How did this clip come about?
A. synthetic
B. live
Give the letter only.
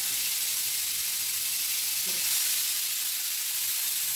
B